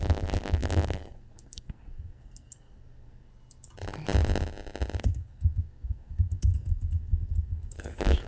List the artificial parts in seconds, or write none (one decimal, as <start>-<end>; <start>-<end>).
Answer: 0.0-3.3; 5.0-8.3